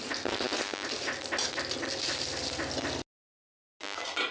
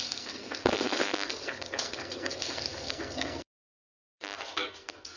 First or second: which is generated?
second